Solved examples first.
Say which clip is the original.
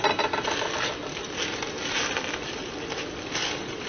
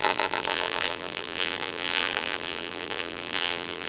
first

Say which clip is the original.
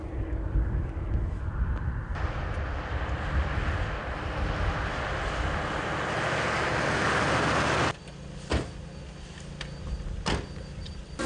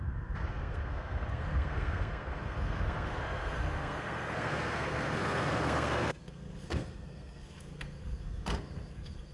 first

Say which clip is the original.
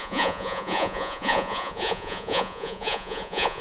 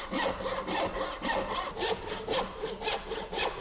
second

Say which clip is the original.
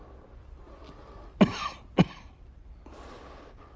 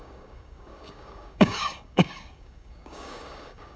first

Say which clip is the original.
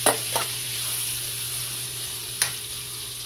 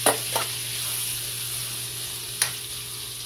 second